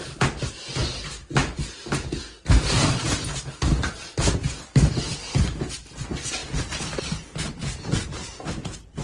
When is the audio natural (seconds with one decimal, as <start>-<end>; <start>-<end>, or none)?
0.0-9.0